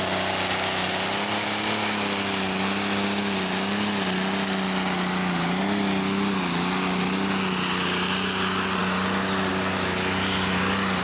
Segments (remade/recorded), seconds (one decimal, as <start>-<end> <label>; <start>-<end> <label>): 0.0-11.0 recorded